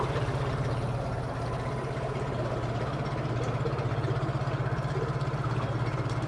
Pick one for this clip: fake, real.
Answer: fake